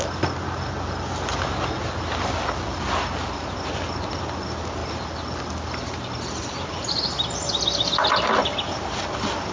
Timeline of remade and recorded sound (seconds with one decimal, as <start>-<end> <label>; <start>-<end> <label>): 0.0-9.5 recorded